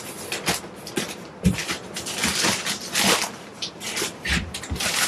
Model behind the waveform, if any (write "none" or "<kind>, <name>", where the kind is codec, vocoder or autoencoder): vocoder, BigVGAN v2